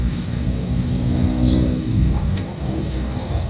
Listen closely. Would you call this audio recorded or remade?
remade